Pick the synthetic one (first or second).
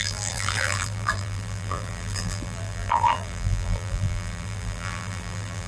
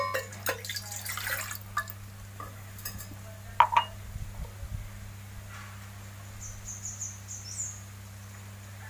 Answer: first